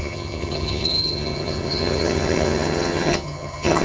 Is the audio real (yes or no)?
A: no